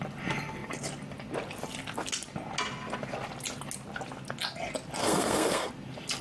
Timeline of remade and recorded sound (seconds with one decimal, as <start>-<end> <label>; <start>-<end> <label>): 0.0-5.0 recorded; 5.0-5.7 remade; 5.7-6.2 recorded